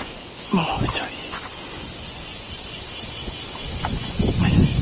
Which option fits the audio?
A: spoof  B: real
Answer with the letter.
A